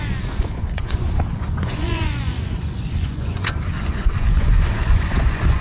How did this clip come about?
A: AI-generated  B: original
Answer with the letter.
A